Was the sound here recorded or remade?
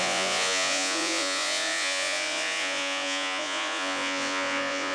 remade